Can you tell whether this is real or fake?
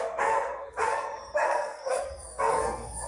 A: fake